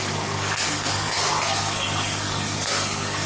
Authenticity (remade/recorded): remade